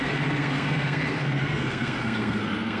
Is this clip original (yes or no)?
no